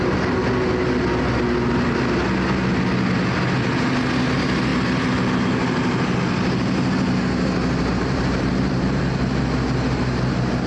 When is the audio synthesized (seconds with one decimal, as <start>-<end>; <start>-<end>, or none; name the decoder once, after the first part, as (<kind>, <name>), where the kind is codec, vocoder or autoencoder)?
7.9-9.0 (vocoder, BigVGAN v2)